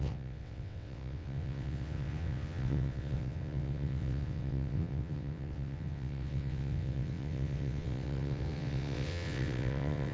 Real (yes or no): no